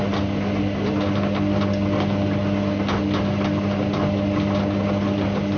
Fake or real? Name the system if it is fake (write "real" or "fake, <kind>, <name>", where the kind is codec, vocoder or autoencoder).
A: real